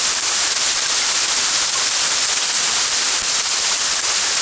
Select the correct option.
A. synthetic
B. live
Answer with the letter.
B